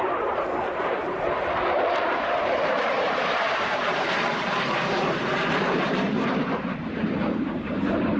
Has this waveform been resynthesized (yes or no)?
yes